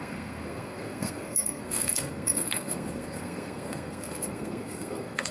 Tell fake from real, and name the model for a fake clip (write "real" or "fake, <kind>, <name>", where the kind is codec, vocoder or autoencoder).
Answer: fake, codec, SNAC